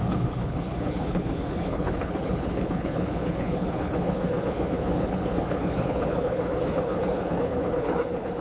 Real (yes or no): no